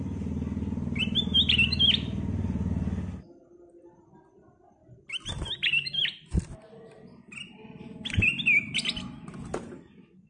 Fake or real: real